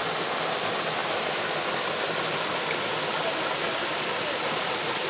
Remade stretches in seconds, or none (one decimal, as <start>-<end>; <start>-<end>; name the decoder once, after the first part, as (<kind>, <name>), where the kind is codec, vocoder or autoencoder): none